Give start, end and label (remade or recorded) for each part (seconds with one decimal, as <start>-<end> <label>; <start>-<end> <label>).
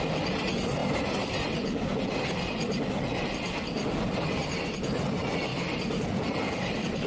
0.0-7.1 recorded